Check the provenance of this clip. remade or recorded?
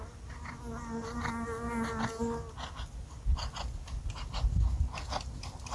recorded